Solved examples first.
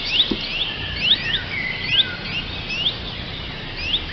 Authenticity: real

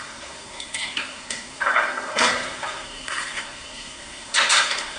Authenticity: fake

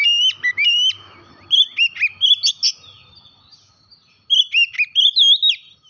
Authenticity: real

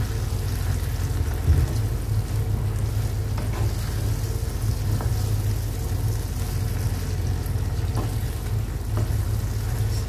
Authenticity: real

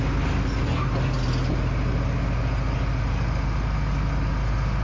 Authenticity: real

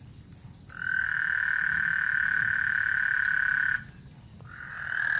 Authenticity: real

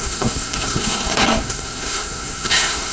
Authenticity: fake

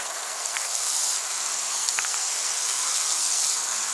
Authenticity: fake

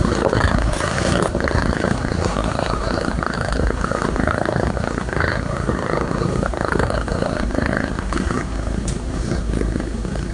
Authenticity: fake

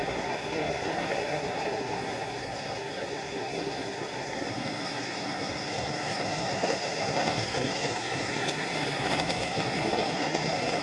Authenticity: fake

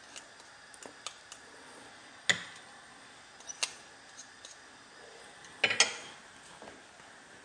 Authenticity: real